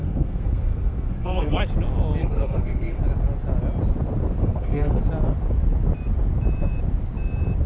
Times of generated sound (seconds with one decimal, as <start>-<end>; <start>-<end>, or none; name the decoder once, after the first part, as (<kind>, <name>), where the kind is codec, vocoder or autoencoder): 0.0-1.6 (codec, SNAC); 2.2-3.0; 4.4-5.0